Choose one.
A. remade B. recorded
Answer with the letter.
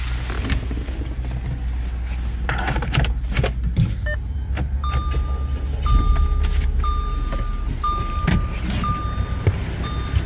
B